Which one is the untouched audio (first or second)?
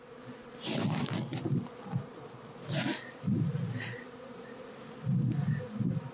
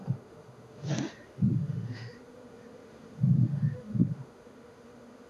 first